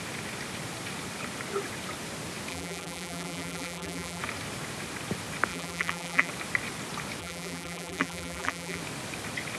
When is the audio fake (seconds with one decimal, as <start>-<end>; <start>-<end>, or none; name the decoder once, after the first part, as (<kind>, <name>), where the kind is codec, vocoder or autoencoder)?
2.5-4.2 (vocoder, BigVGAN v2); 5.5-6.3; 7.2-8.8